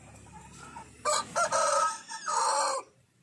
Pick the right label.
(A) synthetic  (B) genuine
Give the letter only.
B